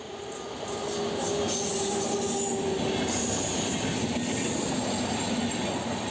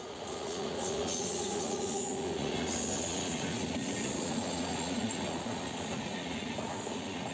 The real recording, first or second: first